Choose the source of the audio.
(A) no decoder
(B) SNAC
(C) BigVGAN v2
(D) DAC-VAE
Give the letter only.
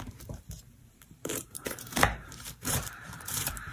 C